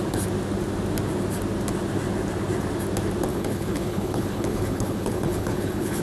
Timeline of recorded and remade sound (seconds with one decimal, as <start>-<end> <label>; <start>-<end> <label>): 0.0-3.3 recorded; 3.3-6.0 remade